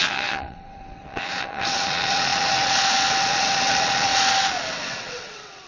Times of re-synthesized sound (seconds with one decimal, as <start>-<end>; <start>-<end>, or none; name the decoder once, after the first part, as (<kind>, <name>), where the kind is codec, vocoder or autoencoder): 0.0-5.7 (vocoder, WaveNeXt)